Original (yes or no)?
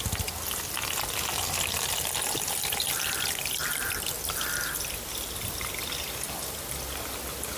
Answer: yes